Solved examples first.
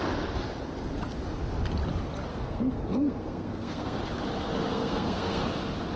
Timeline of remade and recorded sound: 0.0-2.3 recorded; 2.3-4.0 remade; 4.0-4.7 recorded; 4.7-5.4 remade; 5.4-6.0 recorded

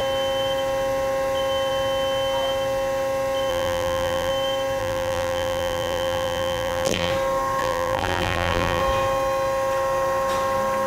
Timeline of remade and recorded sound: 0.0-3.5 recorded; 3.5-4.3 remade; 4.3-4.8 recorded; 4.8-7.1 remade; 7.1-7.6 recorded; 7.6-8.8 remade; 8.8-10.9 recorded

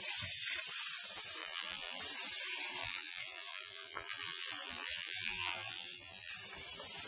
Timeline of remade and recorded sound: 0.0-1.4 recorded; 1.4-2.0 remade; 2.0-2.8 recorded; 2.8-6.3 remade; 6.3-7.1 recorded

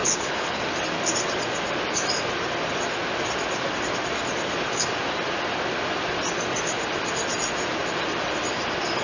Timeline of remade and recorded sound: 0.0-0.6 remade; 0.6-9.0 recorded

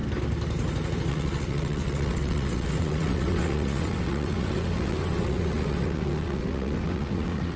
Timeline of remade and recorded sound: 0.0-1.1 recorded; 1.1-7.6 remade

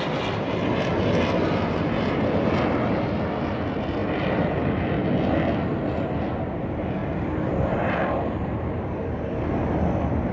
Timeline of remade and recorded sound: 0.0-4.0 recorded; 4.0-5.0 remade; 5.0-7.0 recorded; 7.0-9.3 remade; 9.3-10.3 recorded

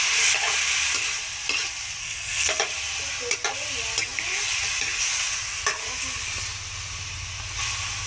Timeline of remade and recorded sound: 0.0-2.0 recorded; 2.0-2.6 remade; 2.6-8.1 recorded

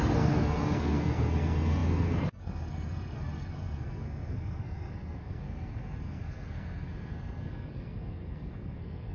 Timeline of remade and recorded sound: 0.0-9.1 remade